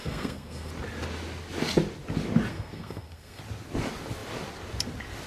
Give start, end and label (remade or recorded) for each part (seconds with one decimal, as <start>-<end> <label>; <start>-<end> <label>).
0.0-0.7 remade; 0.7-2.5 recorded; 2.5-3.4 remade; 3.4-5.3 recorded